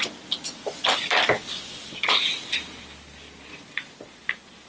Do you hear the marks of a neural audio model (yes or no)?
no